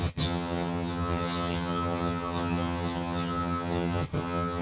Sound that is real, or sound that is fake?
fake